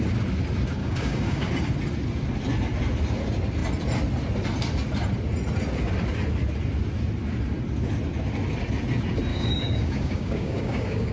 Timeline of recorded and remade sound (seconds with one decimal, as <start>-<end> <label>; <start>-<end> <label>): 0.0-0.8 recorded; 0.8-1.5 remade; 1.5-9.3 recorded; 9.3-11.1 remade